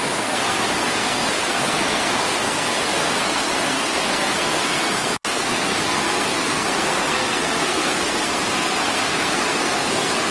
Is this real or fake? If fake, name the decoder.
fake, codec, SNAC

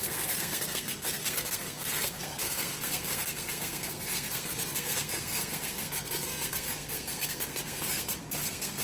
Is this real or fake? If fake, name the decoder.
fake, codec, SNAC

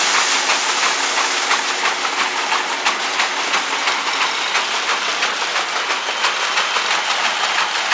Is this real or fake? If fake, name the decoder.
real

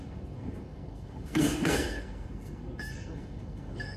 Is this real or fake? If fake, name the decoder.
fake, codec, SNAC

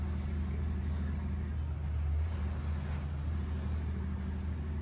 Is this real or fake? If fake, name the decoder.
real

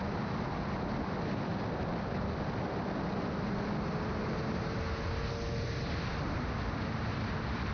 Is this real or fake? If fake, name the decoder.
real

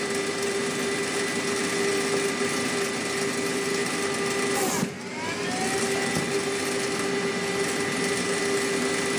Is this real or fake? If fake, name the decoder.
real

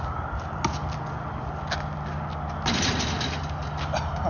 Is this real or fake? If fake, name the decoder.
real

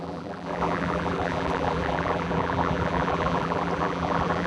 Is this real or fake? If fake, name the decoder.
fake, vocoder, BigVGAN v2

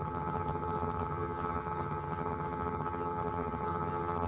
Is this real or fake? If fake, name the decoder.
fake, vocoder, HiFi-GAN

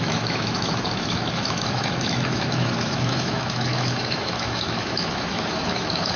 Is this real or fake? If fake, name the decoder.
fake, autoencoder, DAC-VAE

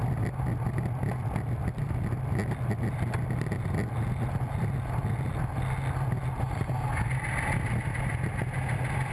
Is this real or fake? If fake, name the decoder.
real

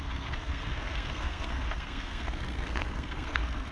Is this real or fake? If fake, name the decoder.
fake, codec, SNAC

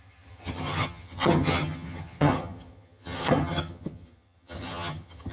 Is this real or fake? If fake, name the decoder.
fake, vocoder, HiFi-GAN